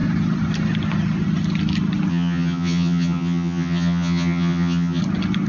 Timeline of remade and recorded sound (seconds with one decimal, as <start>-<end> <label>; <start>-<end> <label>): 0.0-2.1 recorded; 2.1-5.0 remade; 5.0-5.5 recorded

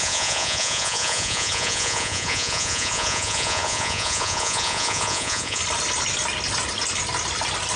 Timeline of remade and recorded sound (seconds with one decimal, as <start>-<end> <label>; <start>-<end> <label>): 0.0-5.6 remade; 5.6-7.8 recorded